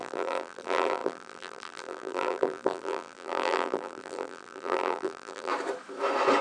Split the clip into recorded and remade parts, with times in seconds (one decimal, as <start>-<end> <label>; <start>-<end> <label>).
0.0-5.5 remade; 5.5-6.4 recorded